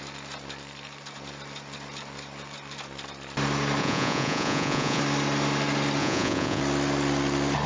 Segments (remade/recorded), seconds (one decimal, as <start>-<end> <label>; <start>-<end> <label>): 0.0-3.8 recorded; 3.8-5.0 remade; 5.0-6.0 recorded; 6.0-6.6 remade; 6.6-7.7 recorded